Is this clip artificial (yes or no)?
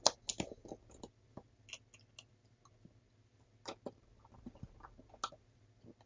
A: no